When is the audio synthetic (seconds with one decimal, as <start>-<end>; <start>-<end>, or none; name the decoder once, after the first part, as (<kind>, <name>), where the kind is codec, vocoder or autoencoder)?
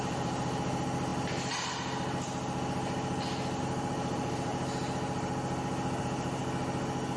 0.0-1.1 (vocoder, BigVGAN v2); 3.6-4.5; 6.0-6.4